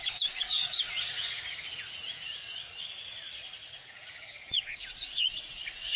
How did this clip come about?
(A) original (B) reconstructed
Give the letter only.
B